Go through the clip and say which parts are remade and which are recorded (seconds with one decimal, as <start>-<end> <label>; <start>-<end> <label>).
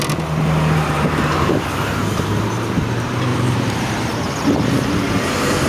0.0-1.7 recorded; 1.7-2.7 remade; 2.7-3.3 recorded; 3.3-5.1 remade; 5.1-5.7 recorded